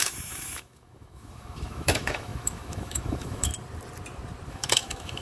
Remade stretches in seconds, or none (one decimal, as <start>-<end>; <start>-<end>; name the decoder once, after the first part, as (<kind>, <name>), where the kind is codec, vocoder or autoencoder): 0.0-3.5 (autoencoder, DAC-VAE); 4.5-5.2